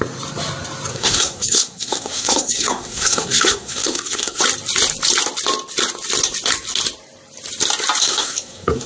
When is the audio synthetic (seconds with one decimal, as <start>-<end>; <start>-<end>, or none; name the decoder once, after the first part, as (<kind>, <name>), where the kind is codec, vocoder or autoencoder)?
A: 0.9-4.4 (codec, SNAC); 8.0-8.9